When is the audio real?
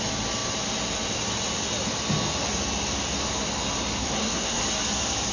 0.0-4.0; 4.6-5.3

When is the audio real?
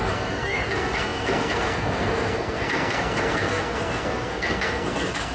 none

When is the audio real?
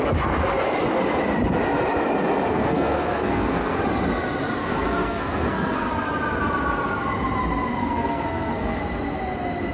0.0-2.5; 3.8-4.6; 5.9-7.8; 8.8-9.7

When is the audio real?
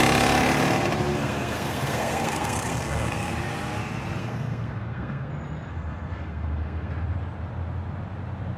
0.0-1.1; 3.3-4.2; 5.3-5.7; 6.9-8.6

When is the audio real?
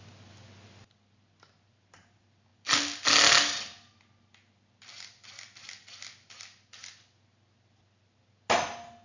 0.0-9.0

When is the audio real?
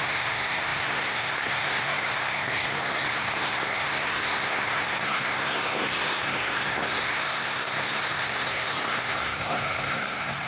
none